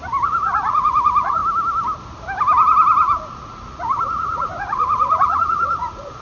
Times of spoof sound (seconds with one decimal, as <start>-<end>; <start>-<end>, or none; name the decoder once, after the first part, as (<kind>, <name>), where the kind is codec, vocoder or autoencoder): 0.0-1.4 (vocoder, Vocos); 3.3-6.2